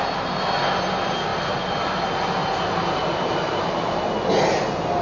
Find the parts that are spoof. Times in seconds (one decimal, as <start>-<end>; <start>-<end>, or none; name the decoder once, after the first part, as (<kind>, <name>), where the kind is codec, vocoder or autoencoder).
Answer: 1.3-2.0 (vocoder, BigVGAN v2); 2.4-4.1